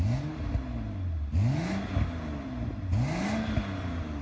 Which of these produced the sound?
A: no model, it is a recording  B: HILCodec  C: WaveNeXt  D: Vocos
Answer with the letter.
A